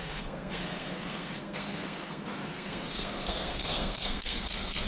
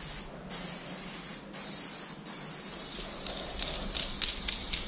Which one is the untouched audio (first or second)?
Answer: second